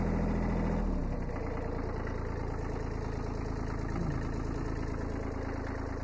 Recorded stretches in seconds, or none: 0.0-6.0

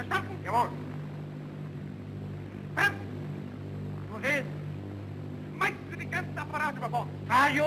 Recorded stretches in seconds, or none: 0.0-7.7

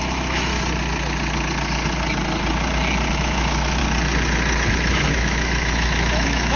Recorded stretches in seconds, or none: 0.5-3.1; 3.8-4.7